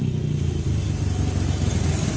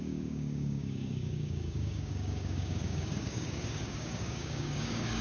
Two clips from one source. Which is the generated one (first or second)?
second